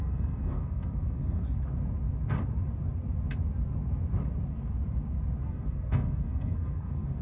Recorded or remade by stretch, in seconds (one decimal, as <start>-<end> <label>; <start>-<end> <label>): 0.0-1.4 remade; 1.4-5.5 recorded; 5.5-7.2 remade